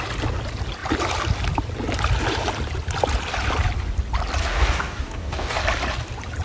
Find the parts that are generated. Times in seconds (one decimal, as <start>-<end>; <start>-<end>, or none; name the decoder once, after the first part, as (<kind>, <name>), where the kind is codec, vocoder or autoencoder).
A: 4.4-5.6 (codec, DAC)